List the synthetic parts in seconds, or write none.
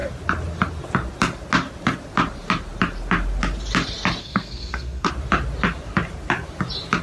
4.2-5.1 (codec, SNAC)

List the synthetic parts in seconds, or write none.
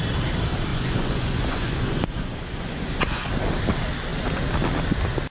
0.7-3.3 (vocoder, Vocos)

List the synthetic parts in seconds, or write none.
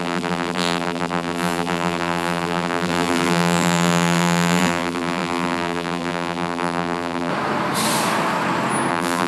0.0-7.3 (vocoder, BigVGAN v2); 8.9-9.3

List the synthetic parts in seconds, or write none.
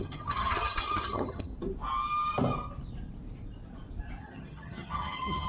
0.0-1.5 (vocoder, HiFi-GAN); 4.2-5.5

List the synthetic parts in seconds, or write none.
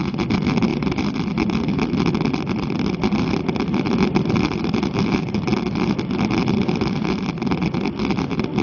none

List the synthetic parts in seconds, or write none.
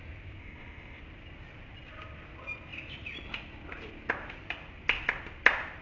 0.4-1.0 (codec, ZipCodec)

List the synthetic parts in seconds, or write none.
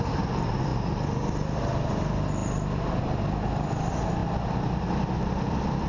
none